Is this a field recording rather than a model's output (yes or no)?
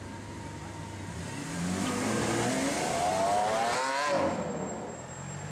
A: yes